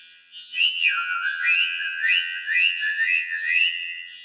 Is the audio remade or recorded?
remade